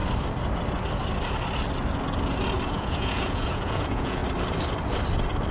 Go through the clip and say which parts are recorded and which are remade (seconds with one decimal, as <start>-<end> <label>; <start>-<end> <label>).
0.0-2.7 recorded; 2.7-4.2 remade; 4.2-5.5 recorded